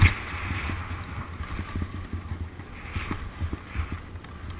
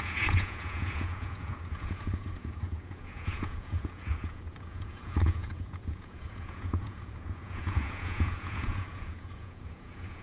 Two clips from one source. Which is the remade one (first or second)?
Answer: second